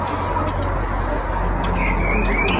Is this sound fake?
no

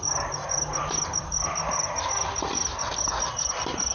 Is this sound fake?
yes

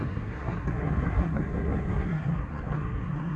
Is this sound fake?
yes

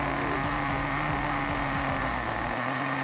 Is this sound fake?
no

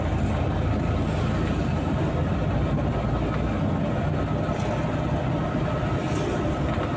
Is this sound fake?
no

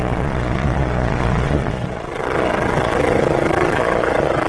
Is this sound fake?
yes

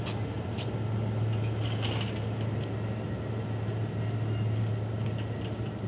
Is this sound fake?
no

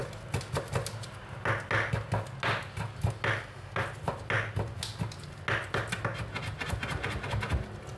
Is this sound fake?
no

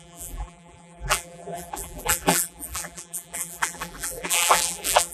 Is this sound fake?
yes